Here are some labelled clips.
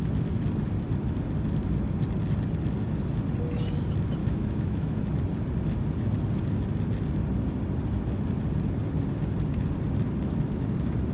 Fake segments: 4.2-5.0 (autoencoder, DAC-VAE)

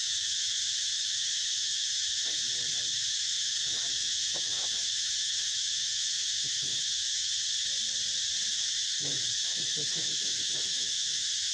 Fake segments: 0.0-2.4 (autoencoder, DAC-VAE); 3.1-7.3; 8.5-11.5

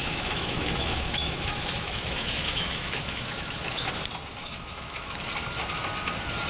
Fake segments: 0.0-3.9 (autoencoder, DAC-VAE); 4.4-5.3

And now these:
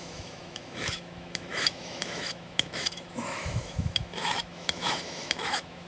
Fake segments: 0.0-5.9 (autoencoder, DAC-VAE)

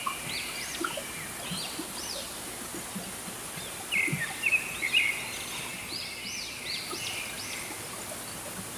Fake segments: none

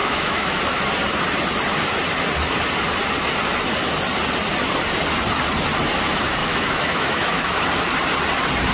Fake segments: 0.0-0.6 (autoencoder, DAC-VAE); 6.4-7.6